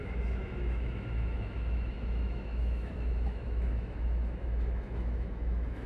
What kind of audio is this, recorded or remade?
remade